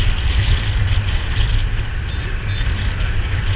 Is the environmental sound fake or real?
real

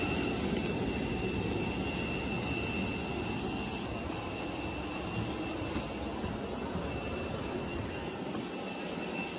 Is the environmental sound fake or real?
real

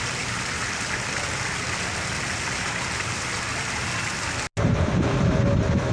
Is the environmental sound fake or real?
real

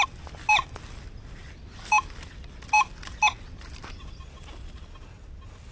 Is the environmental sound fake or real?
real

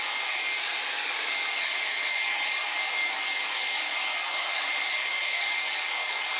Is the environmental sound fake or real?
fake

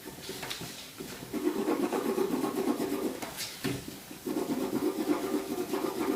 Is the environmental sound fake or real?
fake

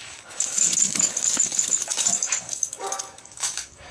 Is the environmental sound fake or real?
fake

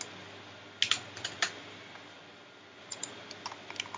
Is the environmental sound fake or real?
real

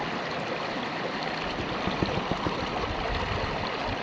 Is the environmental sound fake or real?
real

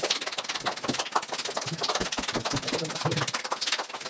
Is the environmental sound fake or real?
real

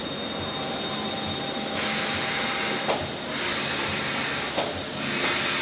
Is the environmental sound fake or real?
real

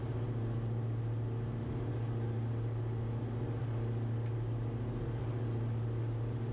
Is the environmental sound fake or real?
real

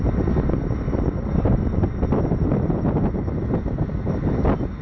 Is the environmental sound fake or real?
real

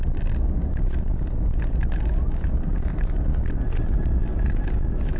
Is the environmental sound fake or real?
real